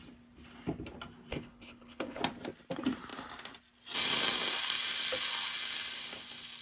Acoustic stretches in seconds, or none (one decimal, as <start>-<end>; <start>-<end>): 0.0-1.3; 2.2-6.6

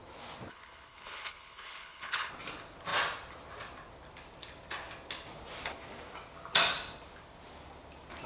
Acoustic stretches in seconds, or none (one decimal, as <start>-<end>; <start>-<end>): 0.0-0.5; 2.3-8.3

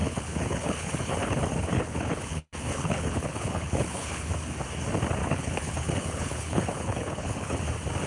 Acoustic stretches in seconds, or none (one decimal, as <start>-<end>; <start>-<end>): 4.3-5.2; 7.6-8.1

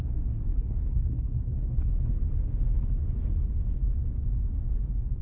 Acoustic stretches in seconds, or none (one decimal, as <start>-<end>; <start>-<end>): 0.0-0.5; 1.9-5.2

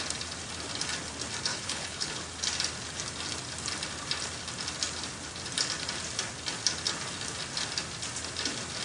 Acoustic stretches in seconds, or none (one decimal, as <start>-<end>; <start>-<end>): 0.0-1.5; 2.2-8.8

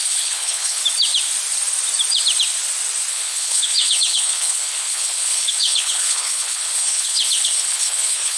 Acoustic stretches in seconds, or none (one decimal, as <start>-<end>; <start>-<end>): 0.8-3.1